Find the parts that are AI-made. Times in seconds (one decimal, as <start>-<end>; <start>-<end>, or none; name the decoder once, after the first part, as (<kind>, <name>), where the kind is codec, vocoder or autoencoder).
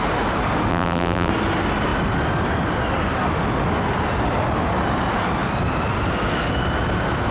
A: 0.7-1.3 (vocoder, BigVGAN v2)